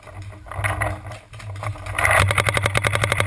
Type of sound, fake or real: real